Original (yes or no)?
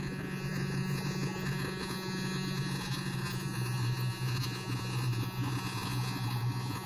no